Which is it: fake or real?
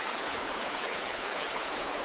fake